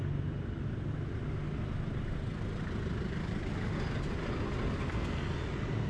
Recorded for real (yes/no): yes